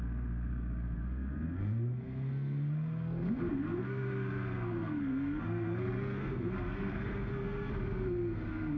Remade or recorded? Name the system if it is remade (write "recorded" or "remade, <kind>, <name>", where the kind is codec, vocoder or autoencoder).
remade, codec, SNAC